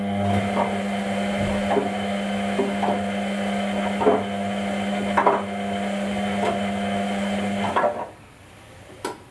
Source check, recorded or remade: recorded